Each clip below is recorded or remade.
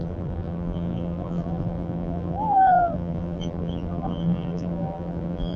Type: remade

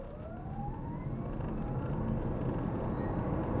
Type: recorded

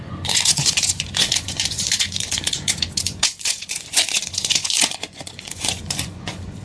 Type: remade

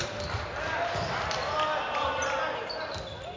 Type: recorded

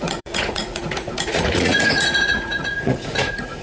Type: remade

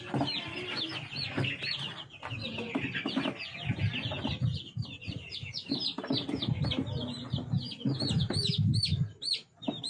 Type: recorded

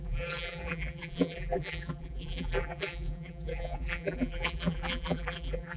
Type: remade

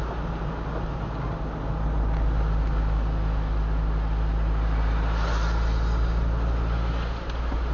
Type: recorded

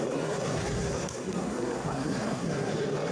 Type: remade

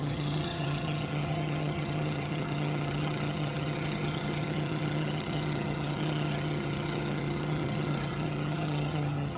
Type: remade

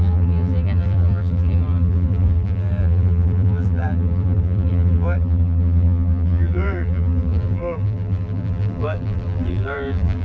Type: remade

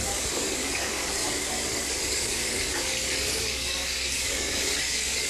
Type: remade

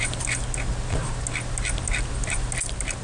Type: recorded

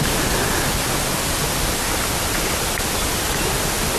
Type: recorded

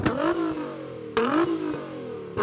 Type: recorded